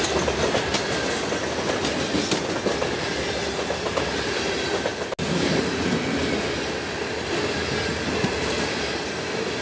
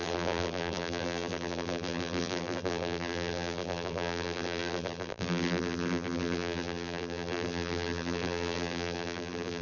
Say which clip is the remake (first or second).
second